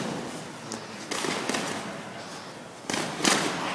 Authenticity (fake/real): real